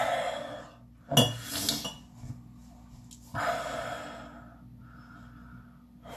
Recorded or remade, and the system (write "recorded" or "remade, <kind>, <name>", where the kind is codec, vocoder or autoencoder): recorded